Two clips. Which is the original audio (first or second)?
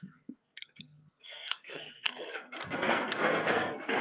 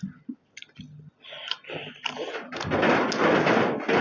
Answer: second